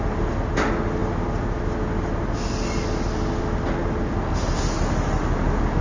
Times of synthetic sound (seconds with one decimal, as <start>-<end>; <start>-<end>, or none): none

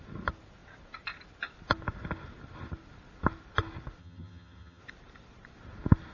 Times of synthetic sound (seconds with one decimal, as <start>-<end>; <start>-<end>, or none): 4.0-4.8

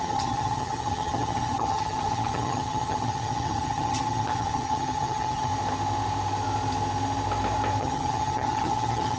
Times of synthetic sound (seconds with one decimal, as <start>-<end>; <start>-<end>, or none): 0.0-5.5; 7.8-9.2

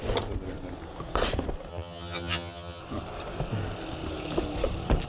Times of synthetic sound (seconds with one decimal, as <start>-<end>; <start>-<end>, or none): 1.7-2.8

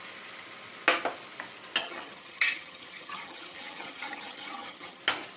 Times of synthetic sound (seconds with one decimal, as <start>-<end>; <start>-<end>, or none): 1.8-5.0

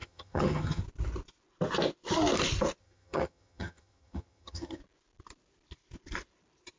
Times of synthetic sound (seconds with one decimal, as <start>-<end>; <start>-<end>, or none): 0.0-0.8; 2.8-4.8

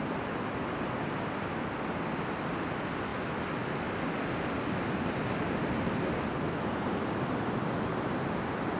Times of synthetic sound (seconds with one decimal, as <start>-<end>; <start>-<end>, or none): none